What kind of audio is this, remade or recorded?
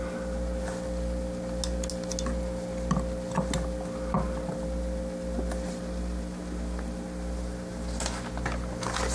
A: recorded